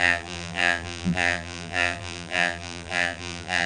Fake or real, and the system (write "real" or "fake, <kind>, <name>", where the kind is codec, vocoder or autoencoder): fake, vocoder, BigVGAN v2